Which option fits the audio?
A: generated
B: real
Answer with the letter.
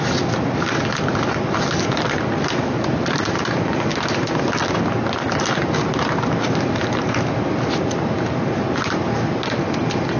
B